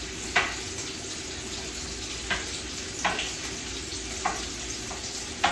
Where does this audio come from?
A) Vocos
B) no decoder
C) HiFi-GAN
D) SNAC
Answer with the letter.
B